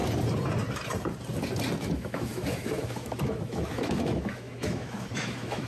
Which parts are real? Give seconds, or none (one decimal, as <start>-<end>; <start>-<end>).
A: 0.0-1.8